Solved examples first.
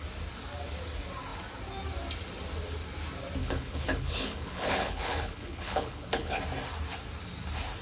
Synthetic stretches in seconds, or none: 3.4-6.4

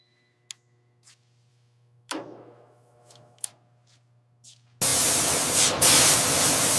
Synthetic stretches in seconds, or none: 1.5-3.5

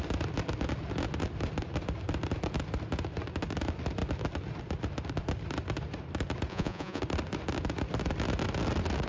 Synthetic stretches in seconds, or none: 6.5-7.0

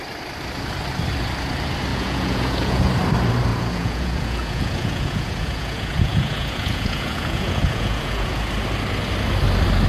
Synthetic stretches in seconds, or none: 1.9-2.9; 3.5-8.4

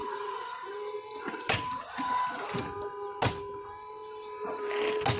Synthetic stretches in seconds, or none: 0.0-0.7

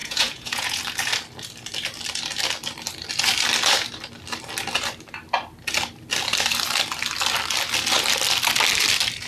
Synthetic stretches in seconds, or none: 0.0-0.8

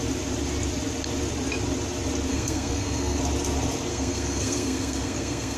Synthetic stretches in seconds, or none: 2.3-3.2; 3.9-5.6